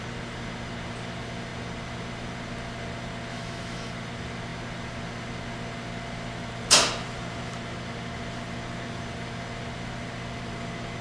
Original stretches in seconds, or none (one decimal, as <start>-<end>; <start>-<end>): 0.0-3.3; 3.9-11.0